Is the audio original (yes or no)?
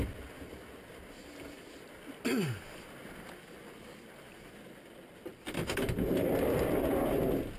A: yes